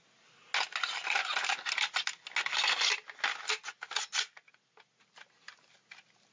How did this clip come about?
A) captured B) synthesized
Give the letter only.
A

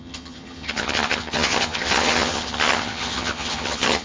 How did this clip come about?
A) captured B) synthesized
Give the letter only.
B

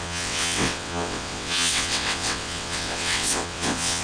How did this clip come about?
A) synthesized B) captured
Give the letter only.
A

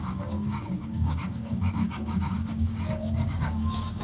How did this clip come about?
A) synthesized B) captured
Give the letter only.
A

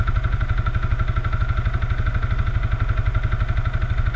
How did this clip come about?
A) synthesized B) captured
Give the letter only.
B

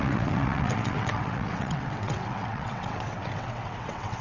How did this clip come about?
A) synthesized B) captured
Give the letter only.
A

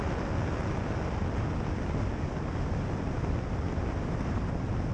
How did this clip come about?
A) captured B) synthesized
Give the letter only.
A